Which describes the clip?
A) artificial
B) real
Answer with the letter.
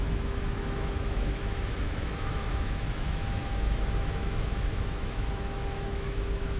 A